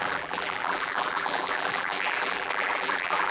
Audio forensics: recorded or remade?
remade